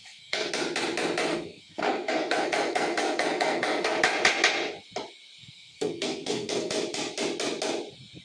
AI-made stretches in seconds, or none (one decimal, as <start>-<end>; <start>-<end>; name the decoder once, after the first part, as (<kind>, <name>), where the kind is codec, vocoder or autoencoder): 0.0-0.5 (codec, SNAC); 1.3-4.0; 5.4-6.7